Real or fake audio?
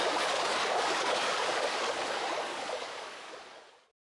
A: fake